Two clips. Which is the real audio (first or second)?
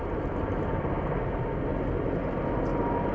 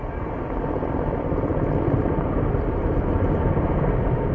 first